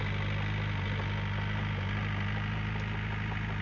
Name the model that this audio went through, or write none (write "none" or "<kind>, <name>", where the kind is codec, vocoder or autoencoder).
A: none